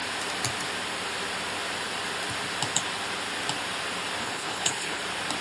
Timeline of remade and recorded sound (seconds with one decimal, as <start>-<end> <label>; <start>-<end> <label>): 0.0-4.2 recorded; 4.2-5.0 remade; 5.0-5.4 recorded